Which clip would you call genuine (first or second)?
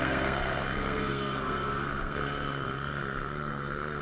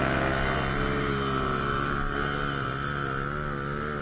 second